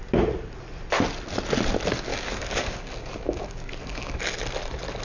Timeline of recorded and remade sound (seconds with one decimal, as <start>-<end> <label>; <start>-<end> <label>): 0.0-2.1 recorded; 2.1-4.2 remade; 4.2-5.0 recorded